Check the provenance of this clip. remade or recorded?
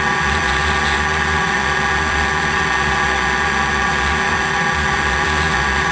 remade